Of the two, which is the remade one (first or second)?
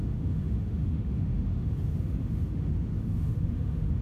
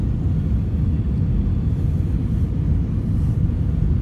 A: first